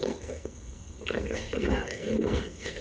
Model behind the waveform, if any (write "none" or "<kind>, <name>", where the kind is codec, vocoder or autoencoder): codec, SNAC